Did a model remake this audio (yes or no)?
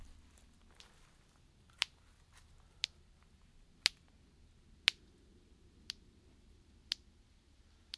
no